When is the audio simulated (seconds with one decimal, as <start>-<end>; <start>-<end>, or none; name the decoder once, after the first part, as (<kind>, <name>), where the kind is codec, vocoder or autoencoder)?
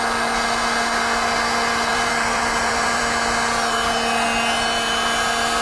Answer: 1.9-3.0 (vocoder, BigVGAN v2)